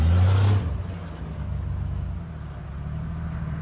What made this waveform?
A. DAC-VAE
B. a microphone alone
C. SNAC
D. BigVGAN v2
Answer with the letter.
B